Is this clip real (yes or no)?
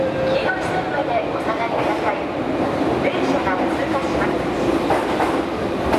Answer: no